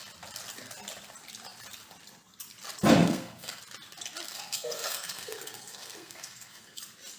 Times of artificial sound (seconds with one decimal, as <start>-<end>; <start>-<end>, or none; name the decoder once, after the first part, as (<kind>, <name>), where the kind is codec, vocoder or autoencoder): 3.0-3.6 (codec, SNAC); 4.3-6.8